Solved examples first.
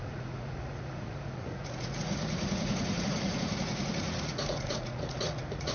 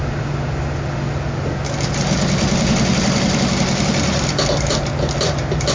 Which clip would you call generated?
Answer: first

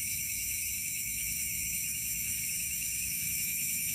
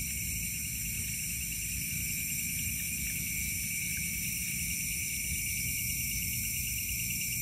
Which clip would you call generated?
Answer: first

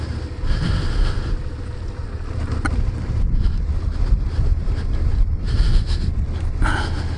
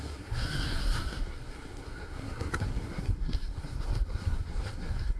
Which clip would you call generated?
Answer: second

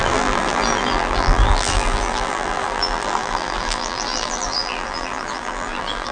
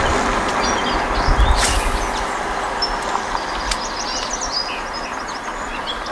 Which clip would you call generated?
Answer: first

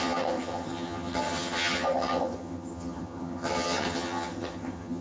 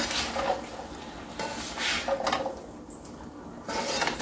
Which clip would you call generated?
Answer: first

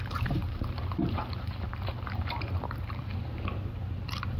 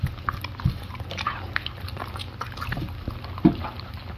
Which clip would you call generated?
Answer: first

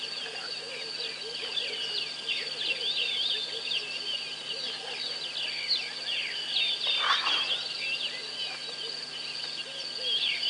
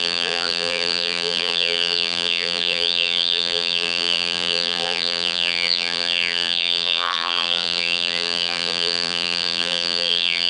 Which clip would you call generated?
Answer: second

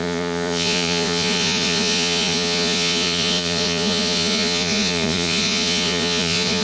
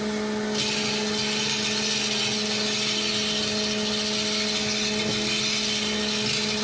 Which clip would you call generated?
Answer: first